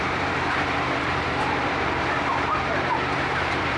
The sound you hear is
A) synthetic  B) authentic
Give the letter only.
A